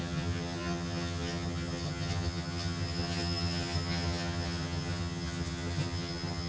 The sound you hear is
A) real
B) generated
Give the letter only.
B